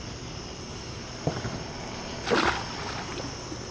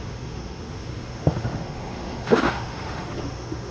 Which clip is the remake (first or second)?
second